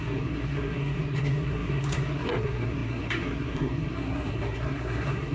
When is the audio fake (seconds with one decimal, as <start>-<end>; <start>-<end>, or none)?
0.0-5.3